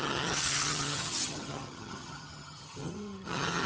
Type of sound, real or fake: fake